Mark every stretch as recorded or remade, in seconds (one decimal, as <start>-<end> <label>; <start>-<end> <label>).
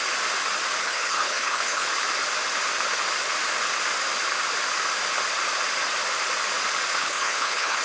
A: 0.0-0.8 recorded; 0.8-1.9 remade; 1.9-6.9 recorded; 6.9-7.8 remade